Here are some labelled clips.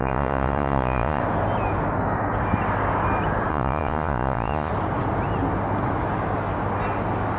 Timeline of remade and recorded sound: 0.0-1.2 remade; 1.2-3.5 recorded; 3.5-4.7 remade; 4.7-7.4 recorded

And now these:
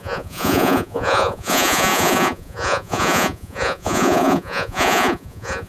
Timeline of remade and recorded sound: 0.0-5.7 remade

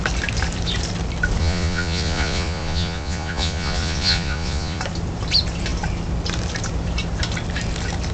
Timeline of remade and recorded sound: 0.0-1.4 recorded; 1.4-4.8 remade; 4.8-8.1 recorded

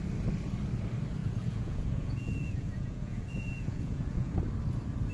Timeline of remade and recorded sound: 0.0-1.2 recorded; 1.2-4.3 remade; 4.3-5.1 recorded

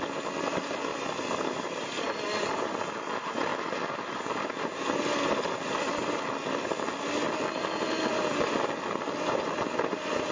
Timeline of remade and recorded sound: 0.0-10.3 recorded

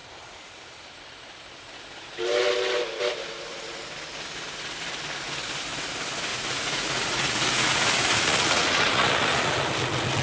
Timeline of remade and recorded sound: 0.0-6.3 recorded; 6.3-9.7 remade; 9.7-10.2 recorded

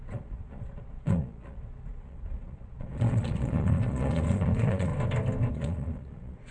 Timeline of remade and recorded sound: 0.0-4.9 remade; 4.9-5.5 recorded; 5.5-6.5 remade

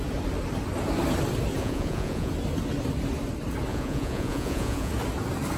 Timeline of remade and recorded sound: 0.0-1.6 recorded; 1.6-2.3 remade; 2.3-3.7 recorded; 3.7-4.9 remade; 4.9-5.6 recorded